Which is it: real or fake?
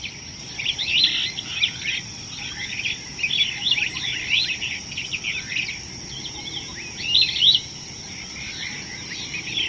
real